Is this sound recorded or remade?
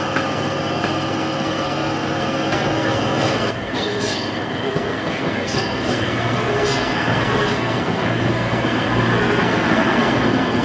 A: remade